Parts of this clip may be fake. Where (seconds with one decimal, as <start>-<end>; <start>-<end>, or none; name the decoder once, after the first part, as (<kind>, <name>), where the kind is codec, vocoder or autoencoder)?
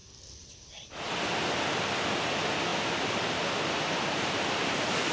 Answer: 2.3-5.1 (vocoder, BigVGAN v2)